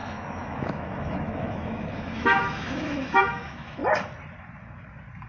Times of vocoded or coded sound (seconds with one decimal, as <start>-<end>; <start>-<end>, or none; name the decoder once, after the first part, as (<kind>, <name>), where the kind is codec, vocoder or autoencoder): 0.0-3.8 (autoencoder, DAC-VAE)